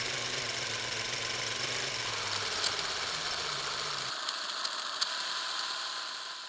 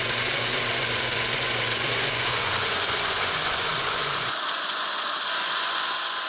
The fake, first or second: second